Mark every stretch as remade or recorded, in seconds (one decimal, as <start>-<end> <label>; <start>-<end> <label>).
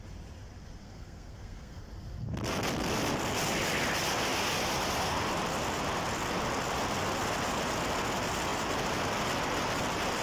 0.0-0.8 recorded; 0.8-1.8 remade; 1.8-10.2 recorded